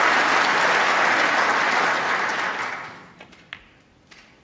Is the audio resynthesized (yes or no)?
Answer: no